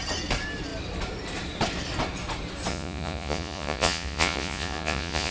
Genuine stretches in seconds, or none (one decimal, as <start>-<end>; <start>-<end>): 0.0-2.7